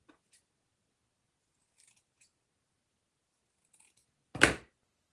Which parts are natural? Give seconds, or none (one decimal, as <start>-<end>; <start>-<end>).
0.0-5.1